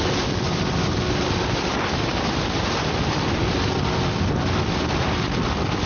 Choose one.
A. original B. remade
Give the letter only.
A